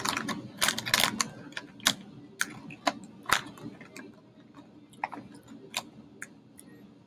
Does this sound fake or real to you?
real